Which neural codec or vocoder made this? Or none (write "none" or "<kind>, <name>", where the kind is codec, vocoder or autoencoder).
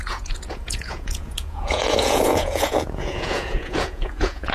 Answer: vocoder, Vocos